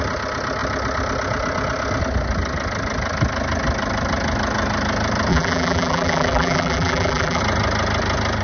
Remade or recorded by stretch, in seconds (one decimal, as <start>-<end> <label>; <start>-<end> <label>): 0.0-5.3 recorded; 5.3-7.4 remade; 7.4-8.4 recorded

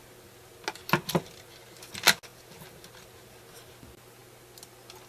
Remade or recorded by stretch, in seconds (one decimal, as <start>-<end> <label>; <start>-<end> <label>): 0.0-5.1 recorded